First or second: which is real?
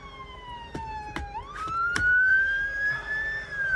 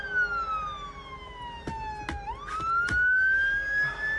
second